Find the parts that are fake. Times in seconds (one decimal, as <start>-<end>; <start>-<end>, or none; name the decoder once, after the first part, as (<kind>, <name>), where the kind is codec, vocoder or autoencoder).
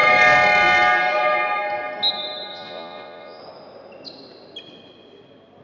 2.5-3.4 (vocoder, Vocos)